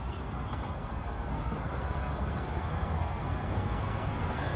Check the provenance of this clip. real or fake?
fake